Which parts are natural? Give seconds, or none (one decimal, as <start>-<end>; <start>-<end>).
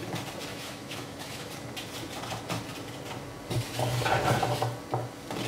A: 0.0-0.5; 1.5-5.5